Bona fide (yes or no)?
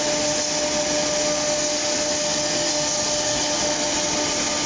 yes